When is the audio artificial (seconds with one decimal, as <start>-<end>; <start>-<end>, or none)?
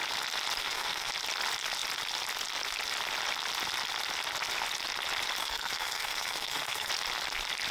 0.6-1.1; 5.4-6.9